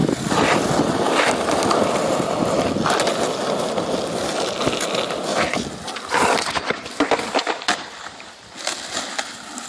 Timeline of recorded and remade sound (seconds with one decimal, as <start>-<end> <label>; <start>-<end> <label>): 0.0-0.9 remade; 0.9-5.3 recorded; 5.3-8.5 remade; 8.5-9.7 recorded